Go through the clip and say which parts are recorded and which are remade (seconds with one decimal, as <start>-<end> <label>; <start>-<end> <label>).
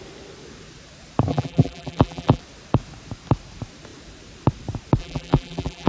0.0-1.3 recorded; 1.3-2.4 remade; 2.4-5.0 recorded; 5.0-5.9 remade